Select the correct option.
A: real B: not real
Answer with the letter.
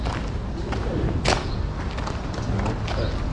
A